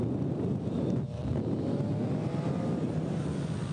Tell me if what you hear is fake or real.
real